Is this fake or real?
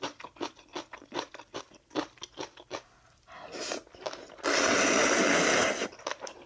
real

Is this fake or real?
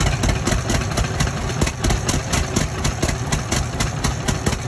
real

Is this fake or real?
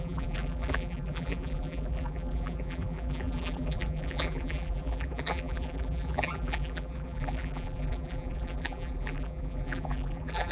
fake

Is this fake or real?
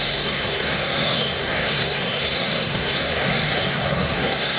fake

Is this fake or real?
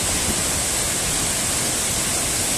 real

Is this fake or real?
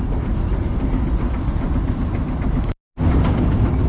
real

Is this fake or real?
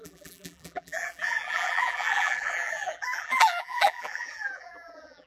fake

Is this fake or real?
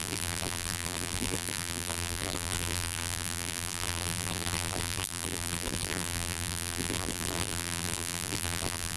fake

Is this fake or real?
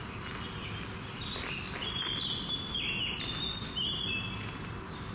real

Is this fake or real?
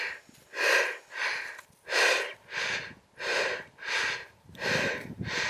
real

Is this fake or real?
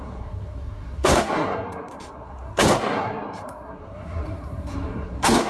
fake